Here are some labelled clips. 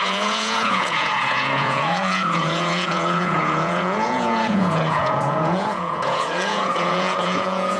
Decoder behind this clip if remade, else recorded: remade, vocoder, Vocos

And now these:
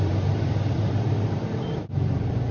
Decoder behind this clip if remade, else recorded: remade, vocoder, BigVGAN v2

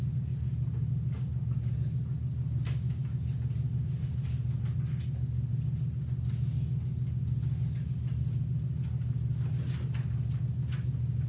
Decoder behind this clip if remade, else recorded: recorded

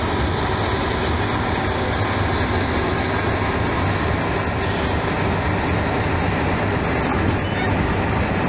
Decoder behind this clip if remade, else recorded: recorded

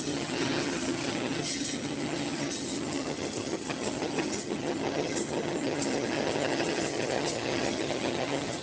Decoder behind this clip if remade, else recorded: remade, vocoder, HiFi-GAN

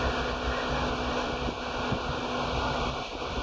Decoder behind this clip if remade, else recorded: recorded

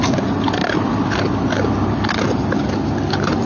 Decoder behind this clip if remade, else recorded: recorded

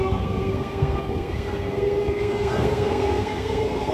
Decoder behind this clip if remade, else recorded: remade, codec, SNAC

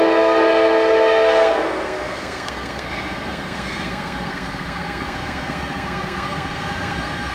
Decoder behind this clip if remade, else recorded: remade, codec, SNAC